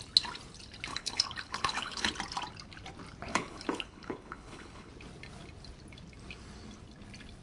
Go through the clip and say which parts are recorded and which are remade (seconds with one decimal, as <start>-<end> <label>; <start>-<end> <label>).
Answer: 0.0-0.9 recorded; 0.9-2.1 remade; 2.1-3.3 recorded; 3.3-4.9 remade; 4.9-7.4 recorded